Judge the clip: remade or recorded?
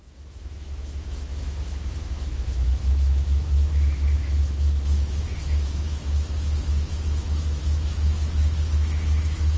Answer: remade